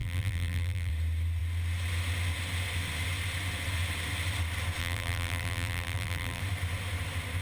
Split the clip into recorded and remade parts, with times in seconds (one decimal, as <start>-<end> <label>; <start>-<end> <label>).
0.0-0.9 remade; 0.9-4.8 recorded; 4.8-6.4 remade; 6.4-7.4 recorded